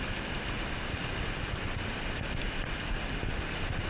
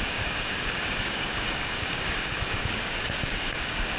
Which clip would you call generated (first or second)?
second